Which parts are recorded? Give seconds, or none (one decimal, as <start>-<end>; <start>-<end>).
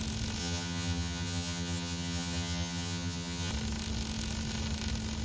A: 0.0-0.4; 3.5-5.2